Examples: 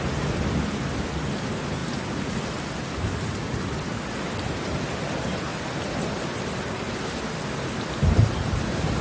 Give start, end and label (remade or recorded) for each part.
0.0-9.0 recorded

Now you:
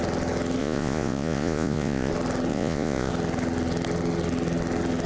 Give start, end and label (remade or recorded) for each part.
0.0-0.6 recorded; 0.6-2.1 remade; 2.1-2.5 recorded; 2.5-3.1 remade; 3.1-5.1 recorded

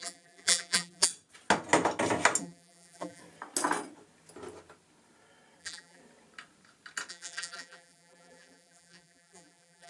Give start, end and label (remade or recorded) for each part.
0.0-1.1 remade; 1.1-2.4 recorded; 2.4-3.2 remade; 3.2-5.6 recorded; 5.6-6.0 remade; 6.0-7.1 recorded; 7.1-9.9 remade

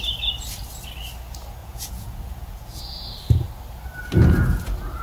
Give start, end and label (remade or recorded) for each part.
0.0-1.6 recorded; 1.6-2.8 remade; 2.8-5.0 recorded

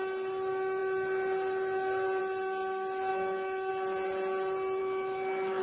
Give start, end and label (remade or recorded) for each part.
0.0-3.1 recorded; 3.1-3.7 remade; 3.7-4.8 recorded; 4.8-5.6 remade

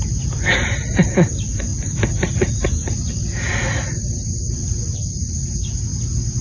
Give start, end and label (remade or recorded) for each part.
0.0-6.4 recorded

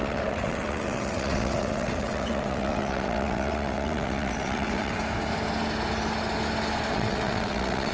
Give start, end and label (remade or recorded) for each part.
0.0-5.0 remade; 5.0-6.9 recorded; 6.9-7.9 remade